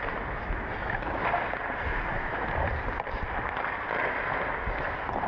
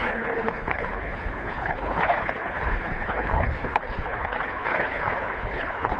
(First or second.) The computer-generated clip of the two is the second